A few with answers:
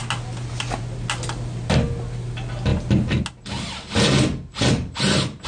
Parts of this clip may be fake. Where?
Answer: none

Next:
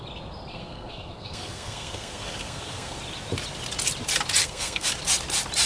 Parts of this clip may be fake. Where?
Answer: 0.5-3.0 (codec, SNAC); 4.4-4.9